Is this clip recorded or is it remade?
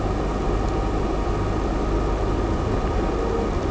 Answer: recorded